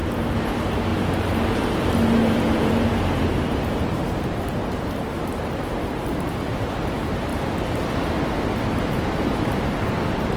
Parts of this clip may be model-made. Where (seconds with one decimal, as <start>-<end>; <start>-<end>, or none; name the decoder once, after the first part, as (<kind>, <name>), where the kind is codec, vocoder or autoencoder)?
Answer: 0.5-7.3 (vocoder, BigVGAN v2); 8.8-10.4